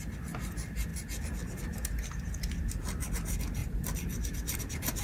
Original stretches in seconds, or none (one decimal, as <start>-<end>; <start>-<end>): 0.0-3.6; 4.6-5.0

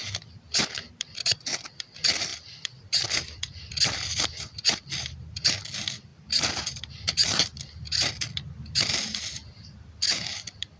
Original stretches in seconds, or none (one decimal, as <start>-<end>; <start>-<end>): 0.0-1.0

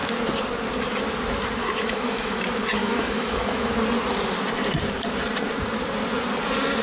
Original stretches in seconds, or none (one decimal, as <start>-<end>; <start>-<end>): 0.0-1.6; 2.4-2.8; 3.7-6.8

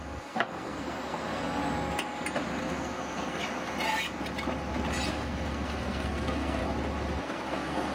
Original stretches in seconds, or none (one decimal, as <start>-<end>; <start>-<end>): 1.6-2.6; 3.4-5.1; 6.6-7.2